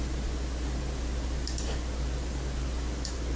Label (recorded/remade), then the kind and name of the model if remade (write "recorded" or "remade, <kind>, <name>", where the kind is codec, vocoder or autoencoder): recorded